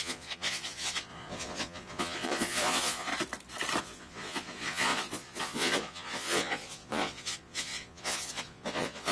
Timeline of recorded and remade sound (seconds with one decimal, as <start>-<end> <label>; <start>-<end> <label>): 0.0-3.1 remade; 3.1-3.8 recorded; 3.8-9.1 remade